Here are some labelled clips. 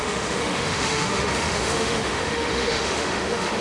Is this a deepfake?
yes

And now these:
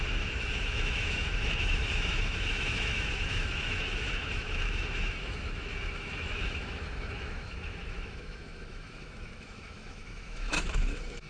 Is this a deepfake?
yes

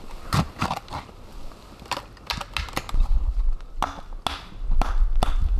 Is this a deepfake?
no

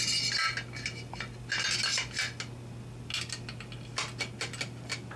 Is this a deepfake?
no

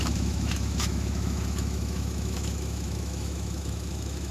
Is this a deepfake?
yes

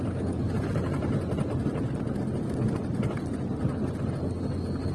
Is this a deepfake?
no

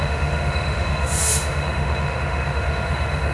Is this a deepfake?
yes